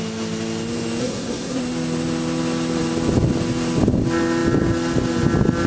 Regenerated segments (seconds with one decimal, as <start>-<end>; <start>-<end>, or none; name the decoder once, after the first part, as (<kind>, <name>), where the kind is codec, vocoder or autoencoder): 1.0-1.6 (codec, SNAC)